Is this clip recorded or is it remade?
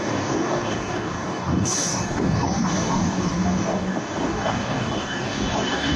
remade